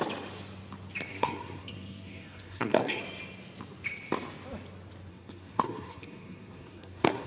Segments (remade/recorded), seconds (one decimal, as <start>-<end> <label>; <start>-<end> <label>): 0.0-1.1 recorded; 1.1-3.0 remade; 3.0-5.1 recorded; 5.1-7.3 remade